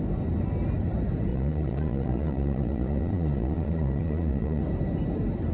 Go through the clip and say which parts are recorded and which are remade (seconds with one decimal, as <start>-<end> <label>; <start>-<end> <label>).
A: 0.0-1.3 recorded; 1.3-4.6 remade; 4.6-5.5 recorded